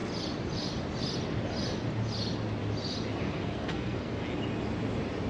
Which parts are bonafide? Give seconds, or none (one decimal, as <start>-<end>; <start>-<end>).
0.0-3.2; 4.2-5.3